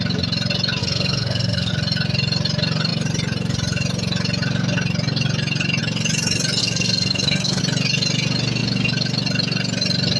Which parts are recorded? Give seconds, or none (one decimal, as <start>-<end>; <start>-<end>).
0.0-0.8; 1.7-6.6; 7.6-10.2